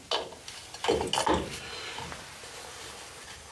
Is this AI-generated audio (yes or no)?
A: no